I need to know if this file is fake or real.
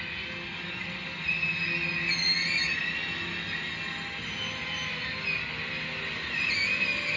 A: real